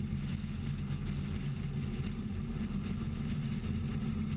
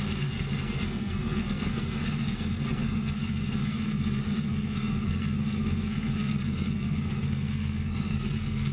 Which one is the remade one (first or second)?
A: second